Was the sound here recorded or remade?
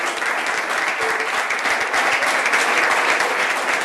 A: recorded